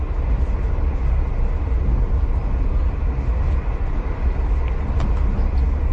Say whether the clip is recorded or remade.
recorded